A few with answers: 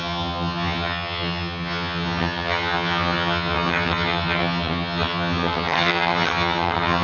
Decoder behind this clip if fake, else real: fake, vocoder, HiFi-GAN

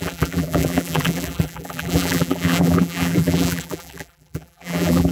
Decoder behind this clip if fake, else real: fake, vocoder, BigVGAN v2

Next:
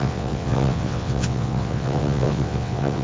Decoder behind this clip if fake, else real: fake, vocoder, WaveNeXt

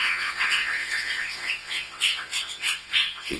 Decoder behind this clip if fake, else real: fake, vocoder, WaveNeXt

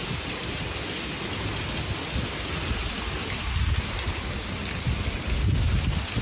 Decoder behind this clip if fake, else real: real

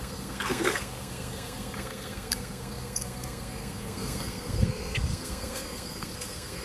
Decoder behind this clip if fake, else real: fake, codec, SNAC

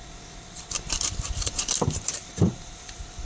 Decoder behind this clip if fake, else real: fake, vocoder, BigVGAN v2